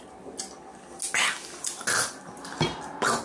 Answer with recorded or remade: recorded